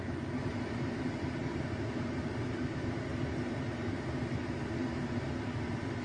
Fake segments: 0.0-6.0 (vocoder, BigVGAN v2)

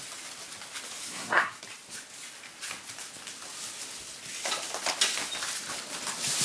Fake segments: 1.0-1.6 (codec, SNAC)